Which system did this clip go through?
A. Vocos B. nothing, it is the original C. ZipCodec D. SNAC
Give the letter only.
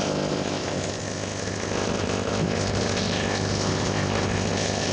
C